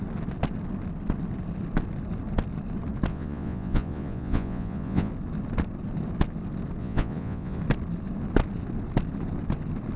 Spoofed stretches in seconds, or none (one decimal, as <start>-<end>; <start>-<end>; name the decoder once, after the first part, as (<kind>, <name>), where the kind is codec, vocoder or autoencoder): 3.1-5.1 (vocoder, Vocos); 6.8-7.6